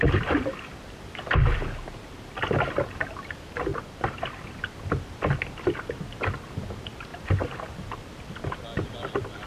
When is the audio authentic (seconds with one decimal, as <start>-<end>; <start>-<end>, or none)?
0.0-3.7; 4.4-9.5